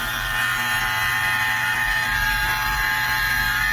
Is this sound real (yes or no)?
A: no